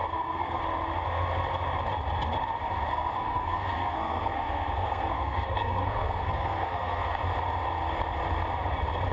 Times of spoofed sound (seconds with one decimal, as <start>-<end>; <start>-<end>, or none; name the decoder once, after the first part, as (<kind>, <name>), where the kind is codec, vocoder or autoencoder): 0.0-0.6 (codec, SNAC); 2.9-7.2